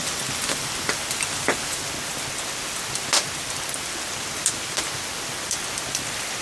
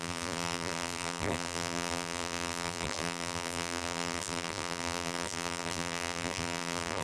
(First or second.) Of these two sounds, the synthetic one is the second